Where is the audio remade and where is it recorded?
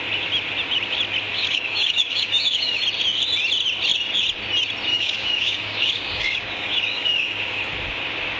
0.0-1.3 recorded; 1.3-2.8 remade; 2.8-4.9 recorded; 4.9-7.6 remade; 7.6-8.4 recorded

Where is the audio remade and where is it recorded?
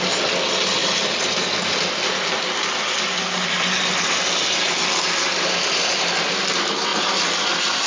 0.0-7.9 recorded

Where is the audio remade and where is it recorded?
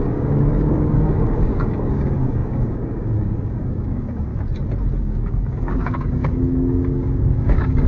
0.0-4.3 remade; 4.3-5.0 recorded; 5.0-7.9 remade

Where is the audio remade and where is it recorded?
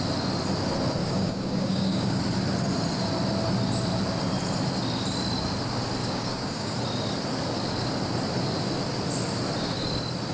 0.0-1.0 recorded; 1.0-2.2 remade; 2.2-6.0 recorded; 6.0-6.7 remade; 6.7-10.3 recorded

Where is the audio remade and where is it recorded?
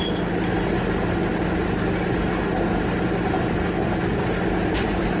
0.0-5.2 recorded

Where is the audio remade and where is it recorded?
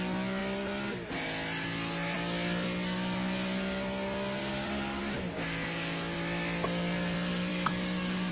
0.0-4.4 recorded; 4.4-5.0 remade; 5.0-7.5 recorded; 7.5-8.3 remade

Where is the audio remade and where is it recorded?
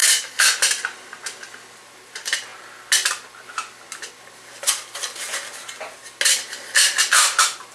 0.0-0.5 remade; 0.5-7.7 recorded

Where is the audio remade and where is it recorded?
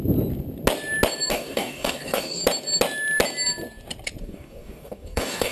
0.0-1.3 recorded; 1.3-2.4 remade; 2.4-4.2 recorded; 4.2-5.5 remade